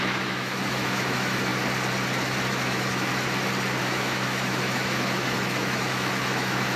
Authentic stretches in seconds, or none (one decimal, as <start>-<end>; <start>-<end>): 1.5-2.5; 3.1-3.8